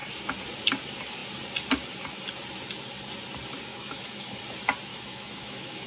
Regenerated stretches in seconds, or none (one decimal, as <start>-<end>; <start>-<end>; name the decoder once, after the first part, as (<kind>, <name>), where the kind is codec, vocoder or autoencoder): 3.7-4.4 (autoencoder, DAC-VAE); 4.9-5.9